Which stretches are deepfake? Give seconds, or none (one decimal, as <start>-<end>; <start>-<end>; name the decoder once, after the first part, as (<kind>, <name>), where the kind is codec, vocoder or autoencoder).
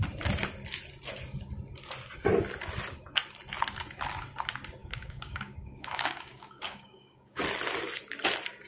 4.8-7.4 (codec, DAC)